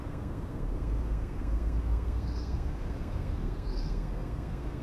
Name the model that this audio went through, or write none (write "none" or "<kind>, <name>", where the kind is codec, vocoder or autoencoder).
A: codec, SNAC